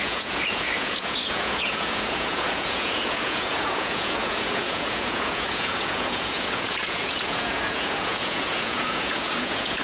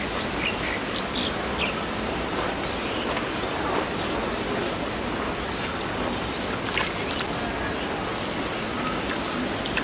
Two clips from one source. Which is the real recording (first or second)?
second